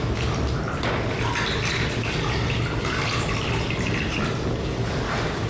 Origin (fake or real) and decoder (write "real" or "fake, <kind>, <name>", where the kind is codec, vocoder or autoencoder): real